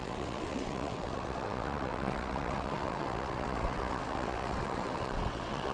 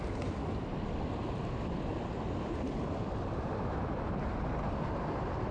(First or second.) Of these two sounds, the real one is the second